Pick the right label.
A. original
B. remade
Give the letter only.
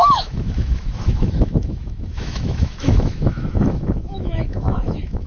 B